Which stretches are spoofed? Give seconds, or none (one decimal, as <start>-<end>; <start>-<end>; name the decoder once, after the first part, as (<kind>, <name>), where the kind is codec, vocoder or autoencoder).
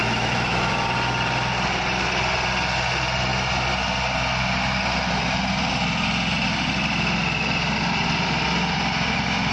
0.0-0.7 (autoencoder, DAC-VAE)